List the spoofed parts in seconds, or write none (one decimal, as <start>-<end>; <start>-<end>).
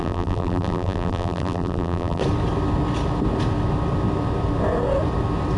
0.0-2.2